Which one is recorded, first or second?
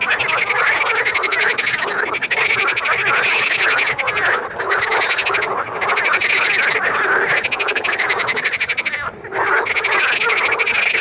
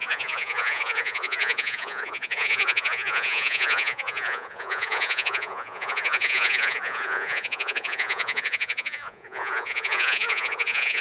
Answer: first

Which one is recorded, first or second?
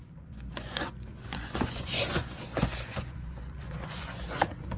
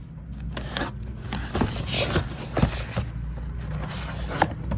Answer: second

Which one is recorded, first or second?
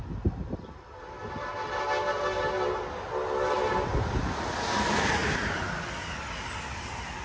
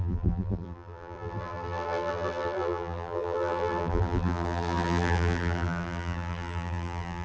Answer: first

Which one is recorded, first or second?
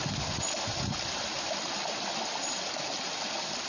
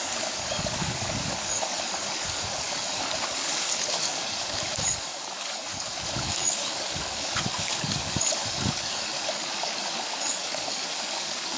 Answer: first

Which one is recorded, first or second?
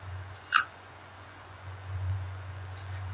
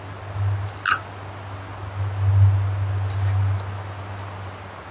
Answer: second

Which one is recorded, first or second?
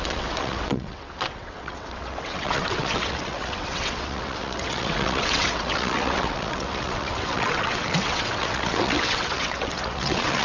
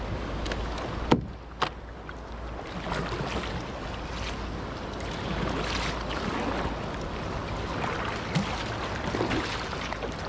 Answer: second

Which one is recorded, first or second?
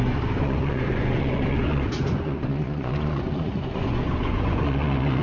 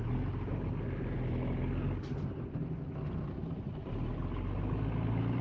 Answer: second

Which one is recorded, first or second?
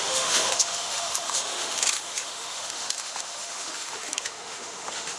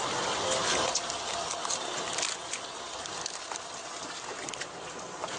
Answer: second